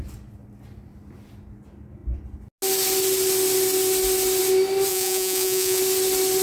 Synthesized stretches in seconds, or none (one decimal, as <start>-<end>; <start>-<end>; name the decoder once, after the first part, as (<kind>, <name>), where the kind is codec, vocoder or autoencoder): 4.9-5.8 (vocoder, Vocos)